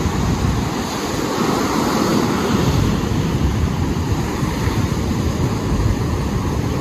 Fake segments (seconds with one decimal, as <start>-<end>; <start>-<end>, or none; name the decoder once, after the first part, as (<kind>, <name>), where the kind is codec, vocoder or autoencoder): none